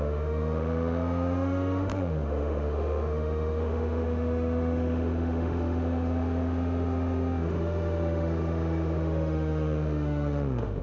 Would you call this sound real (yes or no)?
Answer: no